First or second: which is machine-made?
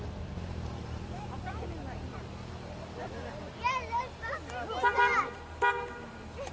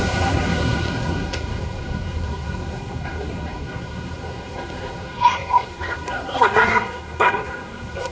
second